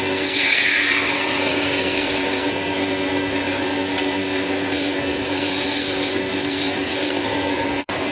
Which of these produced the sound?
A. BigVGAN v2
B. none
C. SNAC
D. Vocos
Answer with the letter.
C